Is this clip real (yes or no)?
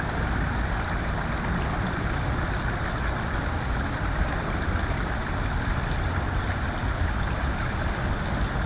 yes